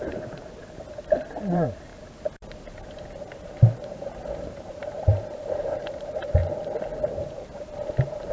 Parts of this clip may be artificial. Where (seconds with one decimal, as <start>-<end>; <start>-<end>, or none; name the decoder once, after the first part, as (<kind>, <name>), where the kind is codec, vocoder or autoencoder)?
0.0-0.6 (vocoder, BigVGAN v2); 1.5-1.9; 3.2-6.4; 7.2-8.3